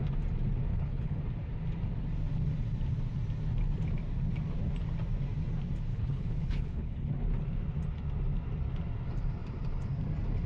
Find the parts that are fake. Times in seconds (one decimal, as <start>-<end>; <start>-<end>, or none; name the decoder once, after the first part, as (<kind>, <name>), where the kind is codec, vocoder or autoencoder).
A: 0.7-1.2 (codec, HILCodec); 5.9-7.1